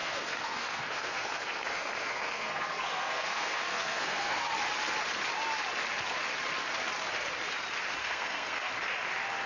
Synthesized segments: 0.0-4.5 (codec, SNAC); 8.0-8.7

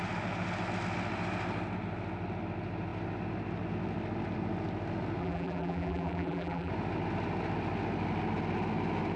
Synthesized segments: 5.2-6.7 (vocoder, BigVGAN v2)

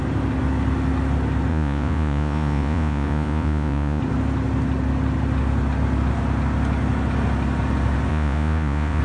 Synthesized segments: 1.5-4.0 (vocoder, Vocos); 8.1-9.0

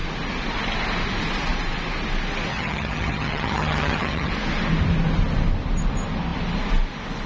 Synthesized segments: 2.5-4.3 (vocoder, HiFi-GAN)